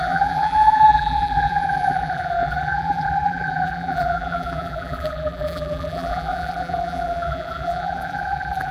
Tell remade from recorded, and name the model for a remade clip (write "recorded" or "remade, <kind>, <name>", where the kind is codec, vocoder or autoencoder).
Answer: remade, vocoder, BigVGAN v2